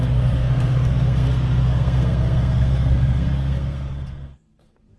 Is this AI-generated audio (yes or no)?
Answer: yes